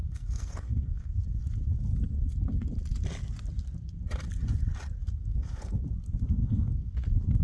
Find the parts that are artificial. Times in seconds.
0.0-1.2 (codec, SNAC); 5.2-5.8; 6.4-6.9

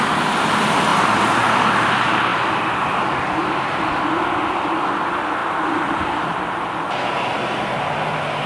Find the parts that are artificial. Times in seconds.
0.9-1.4 (vocoder, BigVGAN v2); 2.3-3.5; 5.4-7.1

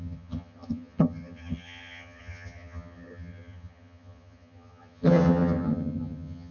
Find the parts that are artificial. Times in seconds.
0.0-6.5 (vocoder, HiFi-GAN)

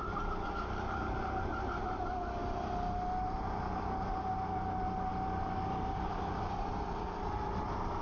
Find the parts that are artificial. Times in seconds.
none

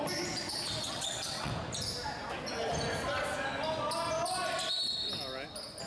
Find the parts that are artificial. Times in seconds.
0.8-1.5 (vocoder, WaveNeXt)

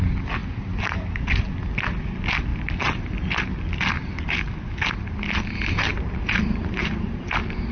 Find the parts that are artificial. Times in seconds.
0.4-1.5 (vocoder, BigVGAN v2); 5.9-7.7

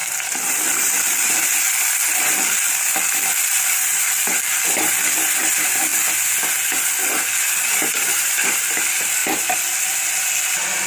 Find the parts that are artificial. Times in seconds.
0.0-5.9 (vocoder, BigVGAN v2); 7.9-9.2